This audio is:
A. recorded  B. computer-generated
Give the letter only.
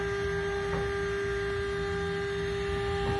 A